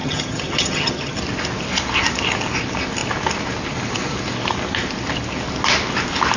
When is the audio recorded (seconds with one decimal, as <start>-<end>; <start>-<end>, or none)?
1.2-6.4